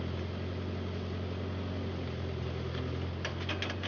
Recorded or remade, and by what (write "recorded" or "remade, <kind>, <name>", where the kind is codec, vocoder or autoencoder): recorded